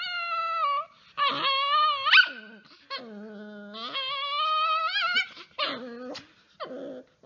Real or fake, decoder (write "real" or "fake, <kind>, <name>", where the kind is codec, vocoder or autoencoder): real